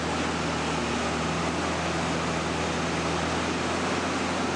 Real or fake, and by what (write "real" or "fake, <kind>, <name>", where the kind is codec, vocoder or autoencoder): real